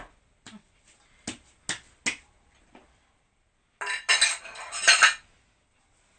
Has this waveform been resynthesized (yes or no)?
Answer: no